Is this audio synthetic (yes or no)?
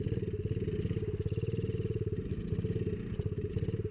no